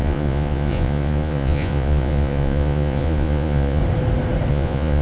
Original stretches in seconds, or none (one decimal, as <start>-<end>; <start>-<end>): 3.8-4.5